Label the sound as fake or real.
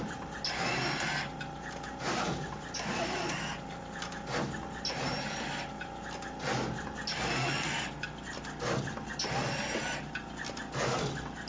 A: real